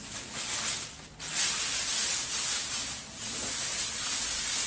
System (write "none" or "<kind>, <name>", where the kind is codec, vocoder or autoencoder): none